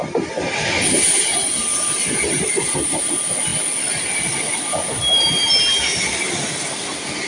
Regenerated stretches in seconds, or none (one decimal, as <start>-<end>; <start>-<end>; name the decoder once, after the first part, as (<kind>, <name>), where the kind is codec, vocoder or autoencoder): none